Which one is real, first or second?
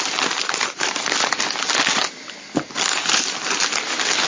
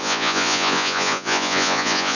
first